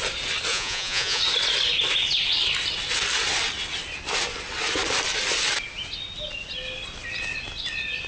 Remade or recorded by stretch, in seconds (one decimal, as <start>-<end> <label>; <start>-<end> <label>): 0.0-0.5 recorded; 0.5-1.2 remade; 1.2-8.1 recorded